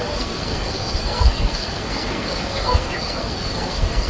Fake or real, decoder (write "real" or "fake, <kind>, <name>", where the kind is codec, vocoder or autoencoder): fake, codec, SNAC